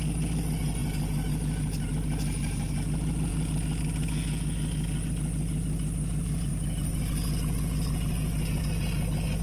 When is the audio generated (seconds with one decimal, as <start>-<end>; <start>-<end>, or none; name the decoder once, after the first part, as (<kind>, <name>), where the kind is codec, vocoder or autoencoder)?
none